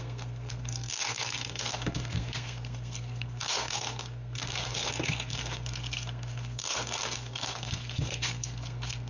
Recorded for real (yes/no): no